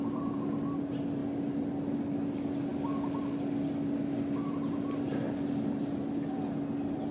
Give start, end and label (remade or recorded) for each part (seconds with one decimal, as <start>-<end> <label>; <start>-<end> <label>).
0.0-7.1 recorded